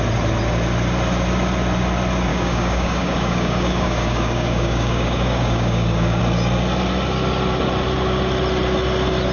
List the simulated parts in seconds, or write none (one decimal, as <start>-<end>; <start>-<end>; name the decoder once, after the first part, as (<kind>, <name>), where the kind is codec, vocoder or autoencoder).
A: 2.3-6.2 (codec, DAC)